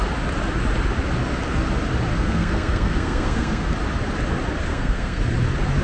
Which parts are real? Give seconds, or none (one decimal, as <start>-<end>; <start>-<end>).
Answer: 0.0-2.1; 3.7-4.7; 5.2-5.8